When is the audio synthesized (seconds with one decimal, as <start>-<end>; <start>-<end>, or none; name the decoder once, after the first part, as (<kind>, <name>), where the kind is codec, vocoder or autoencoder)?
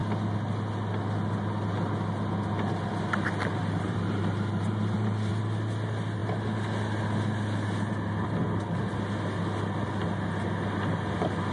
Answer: 3.6-5.3 (vocoder, BigVGAN v2)